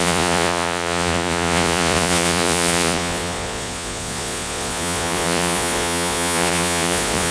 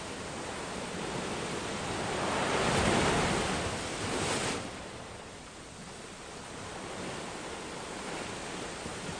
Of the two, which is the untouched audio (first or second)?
second